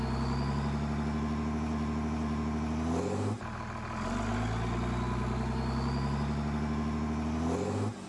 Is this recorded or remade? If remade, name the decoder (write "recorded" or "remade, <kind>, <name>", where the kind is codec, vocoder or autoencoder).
recorded